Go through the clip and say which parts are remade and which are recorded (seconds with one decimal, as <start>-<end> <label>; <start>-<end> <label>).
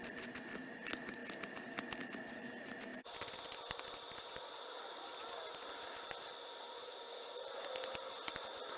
0.0-8.8 recorded